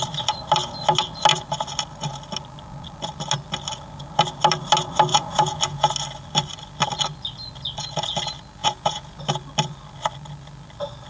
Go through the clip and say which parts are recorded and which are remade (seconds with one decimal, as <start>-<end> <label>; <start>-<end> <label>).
0.0-5.1 recorded; 5.1-5.9 remade; 5.9-8.6 recorded; 8.6-9.2 remade; 9.2-11.1 recorded